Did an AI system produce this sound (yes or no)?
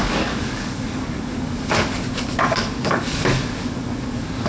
yes